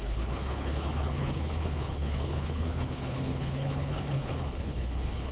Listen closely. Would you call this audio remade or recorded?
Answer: remade